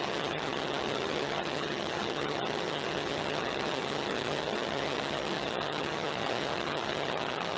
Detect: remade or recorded remade